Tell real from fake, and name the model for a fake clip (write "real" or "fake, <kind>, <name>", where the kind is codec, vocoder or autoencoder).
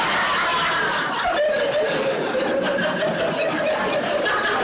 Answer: real